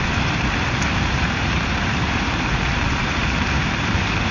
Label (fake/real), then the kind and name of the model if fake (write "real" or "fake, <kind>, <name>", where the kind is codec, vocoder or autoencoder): fake, vocoder, BigVGAN v2